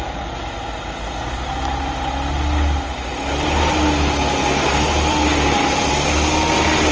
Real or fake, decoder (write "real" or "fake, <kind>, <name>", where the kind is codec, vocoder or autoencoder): real